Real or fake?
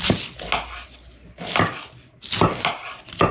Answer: real